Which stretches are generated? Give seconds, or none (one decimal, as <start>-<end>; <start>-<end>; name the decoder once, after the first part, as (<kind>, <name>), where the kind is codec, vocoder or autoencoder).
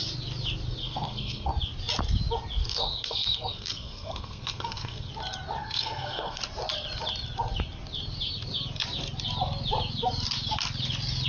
0.8-1.5 (codec, SNAC); 2.6-5.1; 5.6-6.4